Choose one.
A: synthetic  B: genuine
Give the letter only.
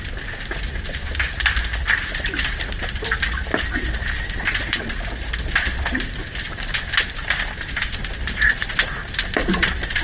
B